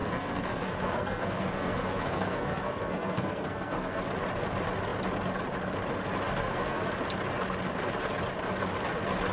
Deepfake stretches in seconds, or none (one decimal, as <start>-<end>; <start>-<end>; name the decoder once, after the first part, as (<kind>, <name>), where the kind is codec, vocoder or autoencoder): 0.0-4.0 (codec, SNAC); 6.4-6.9